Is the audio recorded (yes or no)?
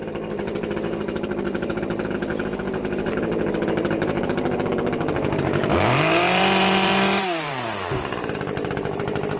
no